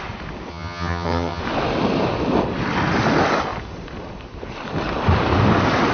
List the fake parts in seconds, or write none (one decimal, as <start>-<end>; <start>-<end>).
0.5-1.4